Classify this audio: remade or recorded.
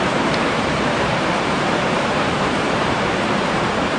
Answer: remade